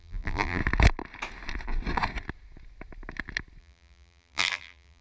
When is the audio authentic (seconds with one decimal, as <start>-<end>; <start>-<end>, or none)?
0.6-3.6